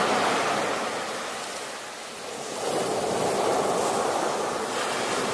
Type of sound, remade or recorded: recorded